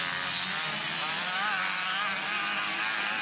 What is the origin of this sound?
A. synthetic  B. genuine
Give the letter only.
B